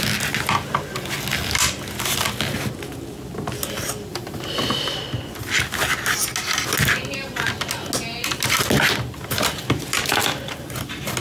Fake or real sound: real